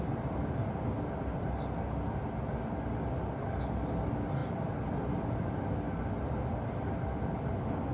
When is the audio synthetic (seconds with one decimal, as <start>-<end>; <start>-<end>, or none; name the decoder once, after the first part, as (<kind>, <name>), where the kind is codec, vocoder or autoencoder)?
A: none